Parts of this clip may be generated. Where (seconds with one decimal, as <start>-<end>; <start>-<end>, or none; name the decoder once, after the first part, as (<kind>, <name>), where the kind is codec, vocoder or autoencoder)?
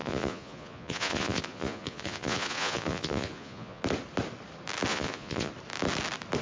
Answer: 0.0-3.8 (vocoder, Vocos); 4.9-5.5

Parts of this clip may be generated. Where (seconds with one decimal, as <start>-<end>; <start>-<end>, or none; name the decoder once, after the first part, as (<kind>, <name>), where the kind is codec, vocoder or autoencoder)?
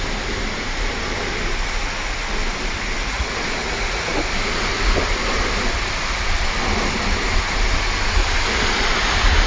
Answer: 3.0-4.1 (vocoder, Vocos)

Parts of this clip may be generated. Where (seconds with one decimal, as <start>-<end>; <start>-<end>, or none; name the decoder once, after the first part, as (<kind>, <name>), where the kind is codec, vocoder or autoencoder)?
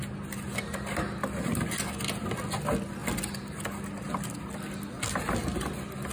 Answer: none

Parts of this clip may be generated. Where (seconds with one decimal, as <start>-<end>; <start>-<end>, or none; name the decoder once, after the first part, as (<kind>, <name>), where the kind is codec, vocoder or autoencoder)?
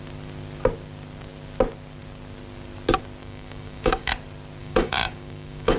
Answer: 3.2-4.1 (codec, DAC); 4.6-5.8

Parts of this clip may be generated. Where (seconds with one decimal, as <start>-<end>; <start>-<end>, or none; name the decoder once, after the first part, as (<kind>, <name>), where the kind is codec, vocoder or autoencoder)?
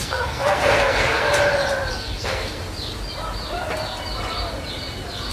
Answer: 0.0-1.3 (codec, SNAC); 1.9-2.6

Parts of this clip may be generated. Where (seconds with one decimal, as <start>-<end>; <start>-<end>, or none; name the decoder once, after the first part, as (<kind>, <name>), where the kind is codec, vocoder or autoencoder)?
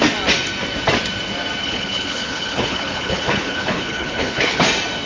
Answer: 1.6-4.6 (codec, HILCodec)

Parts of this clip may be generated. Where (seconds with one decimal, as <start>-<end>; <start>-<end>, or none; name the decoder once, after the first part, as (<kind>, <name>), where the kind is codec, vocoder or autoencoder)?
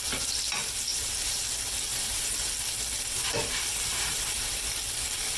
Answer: 0.9-1.4 (vocoder, BigVGAN v2); 1.9-2.5; 3.2-4.6